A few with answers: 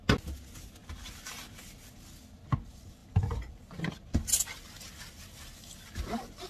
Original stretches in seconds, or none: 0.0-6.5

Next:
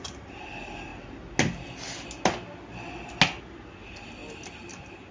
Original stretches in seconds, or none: 0.0-4.2

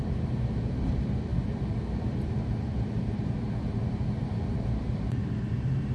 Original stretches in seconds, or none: none